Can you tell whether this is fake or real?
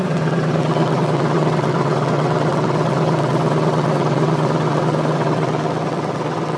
fake